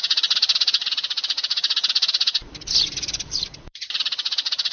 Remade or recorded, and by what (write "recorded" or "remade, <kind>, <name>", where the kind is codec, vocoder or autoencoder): remade, vocoder, BigVGAN v2